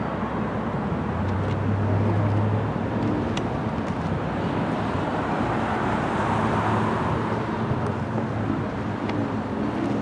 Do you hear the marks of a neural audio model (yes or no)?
no